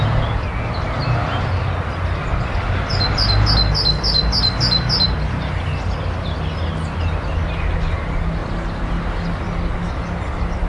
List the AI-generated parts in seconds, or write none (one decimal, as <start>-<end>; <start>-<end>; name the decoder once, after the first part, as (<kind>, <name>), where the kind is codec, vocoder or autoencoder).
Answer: none

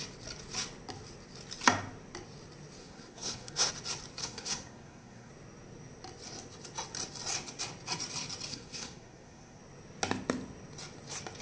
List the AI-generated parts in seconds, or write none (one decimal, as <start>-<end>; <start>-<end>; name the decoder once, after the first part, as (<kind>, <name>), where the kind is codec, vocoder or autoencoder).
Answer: 2.8-3.7 (codec, SNAC); 4.2-5.3; 8.5-9.6

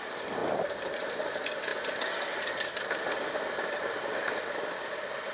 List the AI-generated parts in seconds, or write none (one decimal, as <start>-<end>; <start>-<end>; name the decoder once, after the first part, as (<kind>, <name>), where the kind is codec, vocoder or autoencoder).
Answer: none

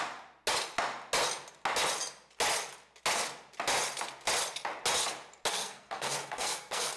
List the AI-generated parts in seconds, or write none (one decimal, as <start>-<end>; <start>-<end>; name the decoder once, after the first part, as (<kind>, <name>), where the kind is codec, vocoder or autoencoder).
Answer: 5.5-7.0 (codec, SNAC)

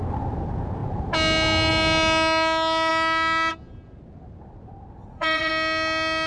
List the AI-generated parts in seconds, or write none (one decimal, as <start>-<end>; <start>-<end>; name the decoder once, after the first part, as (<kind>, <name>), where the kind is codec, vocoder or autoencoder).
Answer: 5.0-5.5 (vocoder, Vocos)